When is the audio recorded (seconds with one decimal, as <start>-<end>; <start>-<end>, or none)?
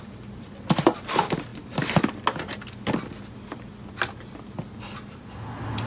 0.0-5.9